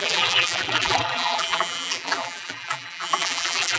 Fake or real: fake